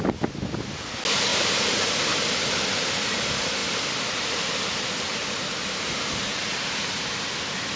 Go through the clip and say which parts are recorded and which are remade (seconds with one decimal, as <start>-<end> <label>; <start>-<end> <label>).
0.0-1.3 recorded; 1.3-1.8 remade; 1.8-6.4 recorded; 6.4-7.2 remade; 7.2-7.8 recorded

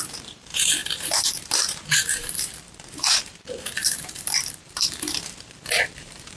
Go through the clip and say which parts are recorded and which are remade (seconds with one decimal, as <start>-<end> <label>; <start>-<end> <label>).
0.0-6.4 remade

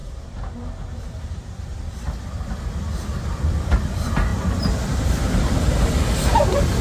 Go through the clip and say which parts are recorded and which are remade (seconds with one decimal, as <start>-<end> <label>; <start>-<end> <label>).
0.0-1.6 remade; 1.6-6.8 recorded

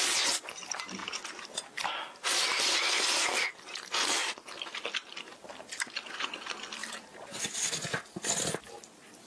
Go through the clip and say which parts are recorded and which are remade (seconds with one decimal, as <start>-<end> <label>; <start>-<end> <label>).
0.0-1.0 recorded; 1.0-1.5 remade; 1.5-6.8 recorded; 6.8-7.4 remade; 7.4-9.3 recorded